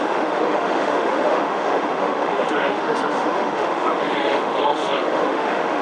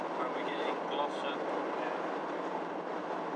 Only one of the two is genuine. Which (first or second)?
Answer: second